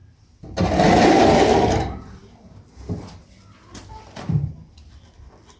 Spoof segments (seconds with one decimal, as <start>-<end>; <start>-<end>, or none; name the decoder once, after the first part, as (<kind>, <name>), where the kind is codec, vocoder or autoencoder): none